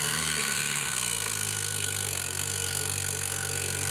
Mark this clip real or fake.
fake